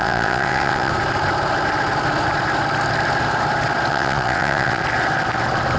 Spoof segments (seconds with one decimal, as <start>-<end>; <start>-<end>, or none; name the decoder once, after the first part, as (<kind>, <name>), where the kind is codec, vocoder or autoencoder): 0.0-0.9 (vocoder, WaveNeXt); 3.9-4.8

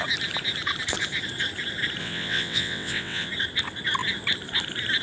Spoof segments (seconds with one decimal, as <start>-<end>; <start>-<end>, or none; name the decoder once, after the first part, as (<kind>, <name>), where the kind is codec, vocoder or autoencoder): 2.0-3.3 (vocoder, WaveNeXt)

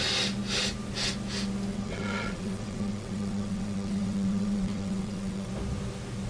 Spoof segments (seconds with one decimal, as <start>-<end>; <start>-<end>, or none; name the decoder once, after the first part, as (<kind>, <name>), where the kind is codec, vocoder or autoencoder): 1.7-5.5 (vocoder, WaveNeXt)

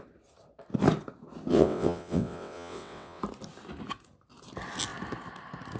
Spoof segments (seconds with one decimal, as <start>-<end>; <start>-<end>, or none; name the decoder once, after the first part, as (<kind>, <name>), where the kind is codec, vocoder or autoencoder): 1.5-3.2 (vocoder, WaveNeXt)

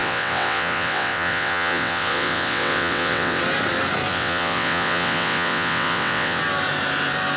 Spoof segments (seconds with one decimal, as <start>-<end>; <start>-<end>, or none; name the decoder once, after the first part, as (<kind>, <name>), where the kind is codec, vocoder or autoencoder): 0.0-3.4 (vocoder, WaveNeXt); 4.1-6.4

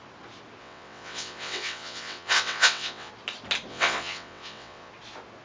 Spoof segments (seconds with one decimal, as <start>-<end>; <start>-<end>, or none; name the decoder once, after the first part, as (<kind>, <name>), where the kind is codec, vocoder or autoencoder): 0.6-3.1 (vocoder, WaveNeXt); 3.7-4.9

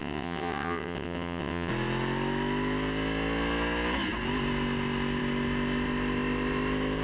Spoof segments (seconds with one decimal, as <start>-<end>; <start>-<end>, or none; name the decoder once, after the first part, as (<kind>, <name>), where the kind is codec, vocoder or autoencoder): 0.0-1.7 (vocoder, WaveNeXt)

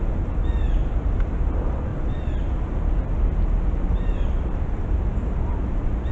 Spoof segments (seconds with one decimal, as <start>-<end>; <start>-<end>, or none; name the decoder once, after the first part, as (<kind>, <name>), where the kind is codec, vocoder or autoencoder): none